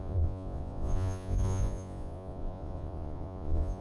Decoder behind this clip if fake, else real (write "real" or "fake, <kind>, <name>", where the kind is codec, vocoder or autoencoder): fake, vocoder, Vocos